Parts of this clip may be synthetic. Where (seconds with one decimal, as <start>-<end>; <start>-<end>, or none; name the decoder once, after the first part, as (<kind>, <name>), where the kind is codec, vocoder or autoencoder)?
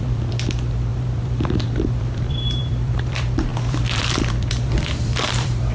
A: 0.0-5.7 (vocoder, BigVGAN v2)